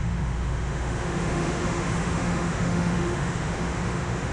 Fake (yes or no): yes